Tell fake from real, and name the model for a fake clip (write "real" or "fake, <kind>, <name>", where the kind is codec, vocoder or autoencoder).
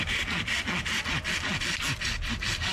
real